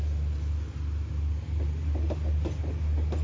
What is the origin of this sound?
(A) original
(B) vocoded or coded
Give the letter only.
A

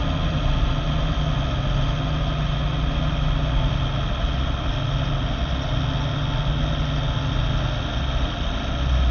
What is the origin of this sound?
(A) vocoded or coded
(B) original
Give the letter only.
B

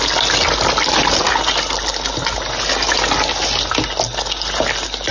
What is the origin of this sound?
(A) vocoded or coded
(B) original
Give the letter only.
B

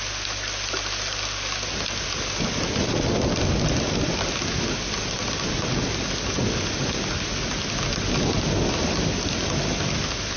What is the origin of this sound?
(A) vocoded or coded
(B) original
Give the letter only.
B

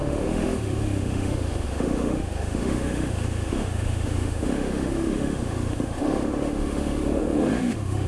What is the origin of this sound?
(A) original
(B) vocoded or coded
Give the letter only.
B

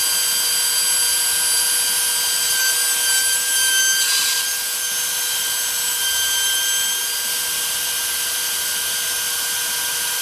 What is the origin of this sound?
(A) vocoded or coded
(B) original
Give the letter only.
B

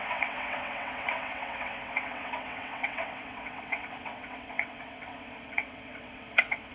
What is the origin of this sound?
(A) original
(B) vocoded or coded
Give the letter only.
B